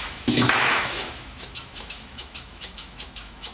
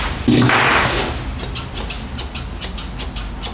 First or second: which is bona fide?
second